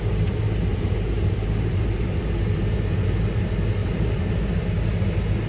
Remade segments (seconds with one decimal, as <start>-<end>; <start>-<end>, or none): 0.7-2.2; 3.8-4.4